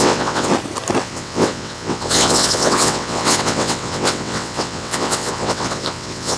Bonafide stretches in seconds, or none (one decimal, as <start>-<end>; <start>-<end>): 0.5-1.0